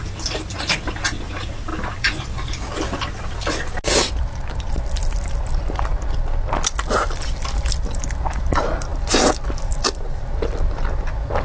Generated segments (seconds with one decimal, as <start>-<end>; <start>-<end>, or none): none